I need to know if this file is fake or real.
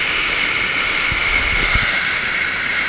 real